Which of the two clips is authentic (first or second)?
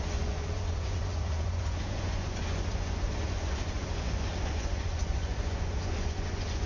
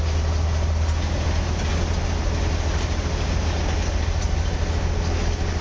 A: second